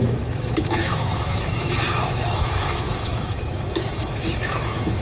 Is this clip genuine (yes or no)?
no